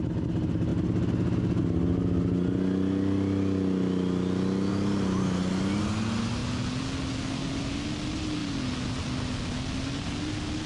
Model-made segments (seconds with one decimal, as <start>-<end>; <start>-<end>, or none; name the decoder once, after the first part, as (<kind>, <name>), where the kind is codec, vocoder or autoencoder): none